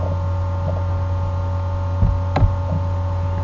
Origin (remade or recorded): recorded